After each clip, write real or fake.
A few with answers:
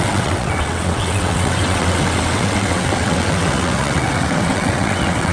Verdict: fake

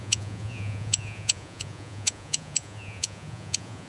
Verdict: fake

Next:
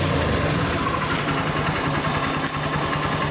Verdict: real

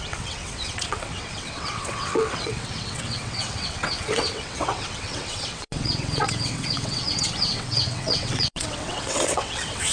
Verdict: fake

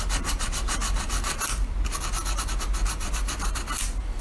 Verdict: real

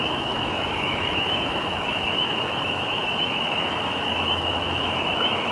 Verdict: fake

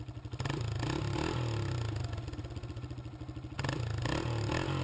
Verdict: real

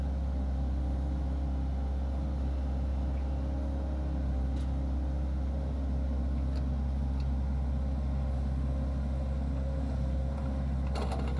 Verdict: real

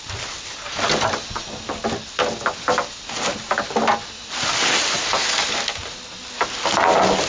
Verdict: real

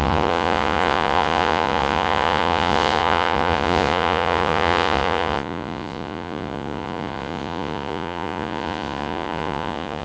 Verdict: fake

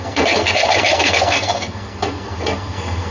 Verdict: fake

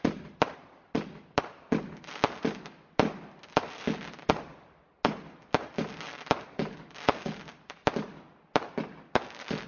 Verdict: real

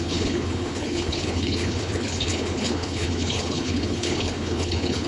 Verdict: fake